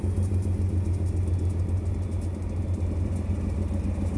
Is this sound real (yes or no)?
yes